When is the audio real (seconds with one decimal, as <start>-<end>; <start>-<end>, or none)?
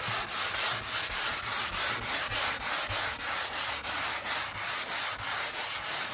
0.0-6.1